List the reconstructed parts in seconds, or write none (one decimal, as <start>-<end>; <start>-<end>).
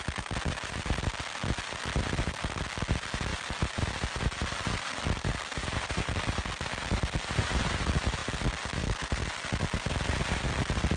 none